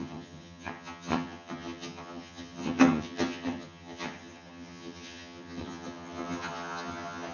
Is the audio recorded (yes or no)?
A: no